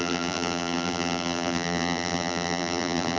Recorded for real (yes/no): no